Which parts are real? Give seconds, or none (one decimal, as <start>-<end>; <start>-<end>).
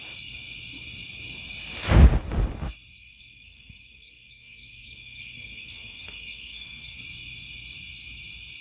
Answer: 0.0-3.0; 7.0-8.6